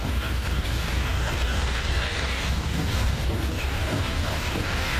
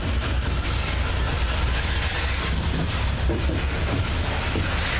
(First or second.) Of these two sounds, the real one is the second